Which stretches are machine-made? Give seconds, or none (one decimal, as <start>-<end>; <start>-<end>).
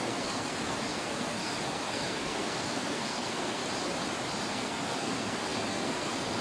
0.0-3.6; 4.5-6.4